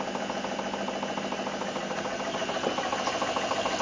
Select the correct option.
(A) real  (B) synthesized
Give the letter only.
A